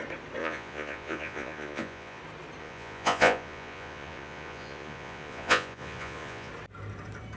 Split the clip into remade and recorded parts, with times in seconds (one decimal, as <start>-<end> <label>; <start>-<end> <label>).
0.0-0.4 recorded; 0.4-2.2 remade; 2.2-2.6 recorded; 2.6-6.5 remade; 6.5-7.4 recorded